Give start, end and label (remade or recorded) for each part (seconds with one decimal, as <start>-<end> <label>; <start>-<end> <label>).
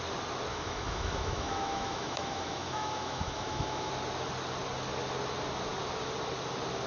0.0-0.5 recorded; 0.5-3.9 remade; 3.9-6.9 recorded